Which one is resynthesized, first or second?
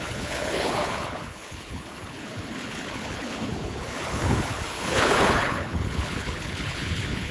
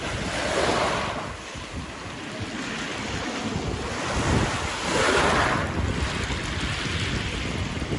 first